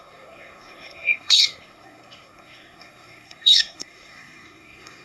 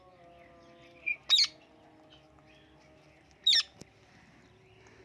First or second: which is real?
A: second